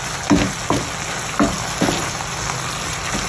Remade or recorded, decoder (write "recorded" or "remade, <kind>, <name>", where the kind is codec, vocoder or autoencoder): recorded